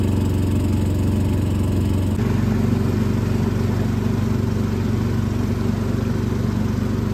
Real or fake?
real